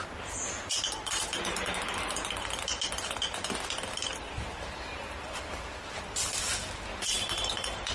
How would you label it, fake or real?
real